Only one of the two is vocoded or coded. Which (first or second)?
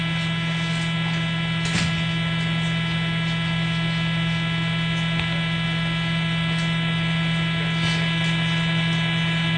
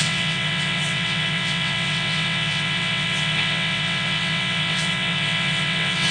second